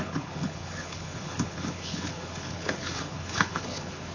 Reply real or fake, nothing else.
fake